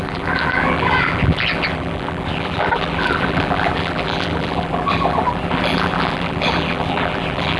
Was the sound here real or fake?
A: fake